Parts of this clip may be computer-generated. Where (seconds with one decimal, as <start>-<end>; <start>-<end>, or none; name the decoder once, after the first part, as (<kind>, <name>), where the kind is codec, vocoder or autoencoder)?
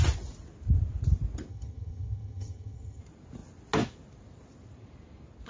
1.5-3.0 (vocoder, HiFi-GAN)